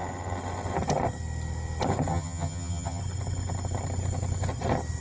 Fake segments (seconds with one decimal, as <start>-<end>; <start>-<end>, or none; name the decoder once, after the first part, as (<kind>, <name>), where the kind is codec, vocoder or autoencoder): 2.1-3.0 (vocoder, HiFi-GAN)